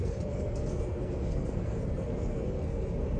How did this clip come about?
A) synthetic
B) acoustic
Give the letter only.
A